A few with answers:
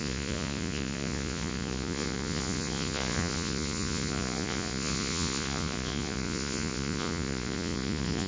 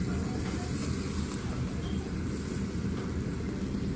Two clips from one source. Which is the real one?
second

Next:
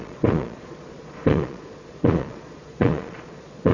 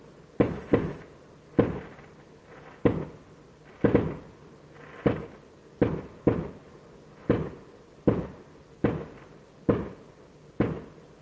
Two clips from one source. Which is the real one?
second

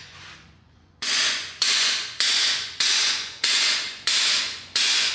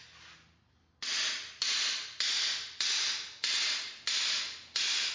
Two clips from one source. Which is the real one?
second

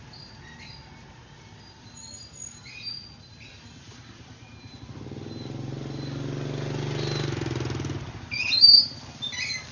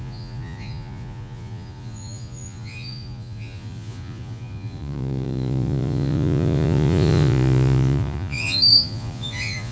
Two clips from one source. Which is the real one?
first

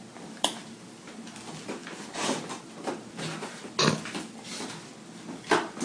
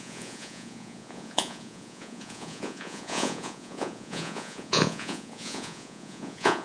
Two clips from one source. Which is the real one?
first